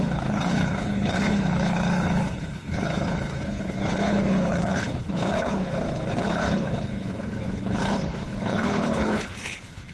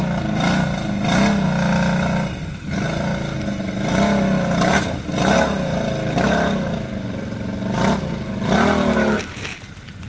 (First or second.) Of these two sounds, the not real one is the first